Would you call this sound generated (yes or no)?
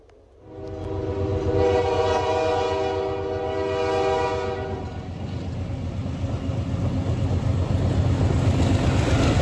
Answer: no